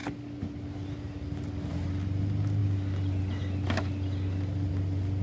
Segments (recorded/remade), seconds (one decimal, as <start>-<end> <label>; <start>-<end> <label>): 0.0-5.2 recorded